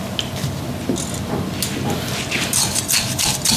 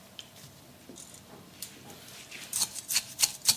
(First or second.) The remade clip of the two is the second